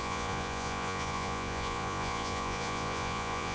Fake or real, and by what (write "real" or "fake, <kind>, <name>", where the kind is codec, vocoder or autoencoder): fake, vocoder, Vocos